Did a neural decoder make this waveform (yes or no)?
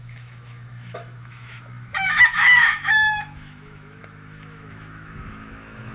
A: yes